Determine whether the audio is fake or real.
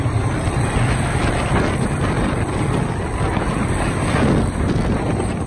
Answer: real